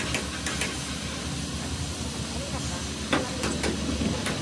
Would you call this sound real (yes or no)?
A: yes